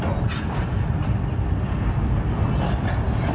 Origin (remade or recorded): recorded